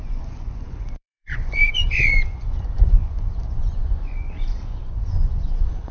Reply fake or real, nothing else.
fake